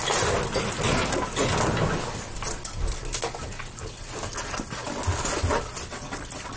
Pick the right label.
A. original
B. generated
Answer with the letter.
A